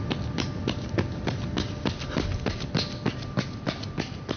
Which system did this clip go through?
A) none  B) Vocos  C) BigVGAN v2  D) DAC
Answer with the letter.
A